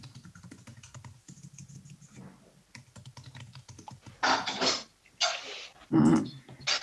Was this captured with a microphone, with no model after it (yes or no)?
yes